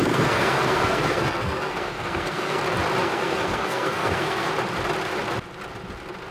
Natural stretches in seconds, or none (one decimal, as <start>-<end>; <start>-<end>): 2.6-3.0; 4.5-6.3